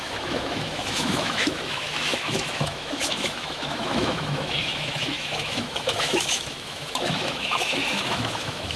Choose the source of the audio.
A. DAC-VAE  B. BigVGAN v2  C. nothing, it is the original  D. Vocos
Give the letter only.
A